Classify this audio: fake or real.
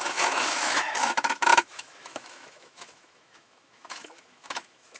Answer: fake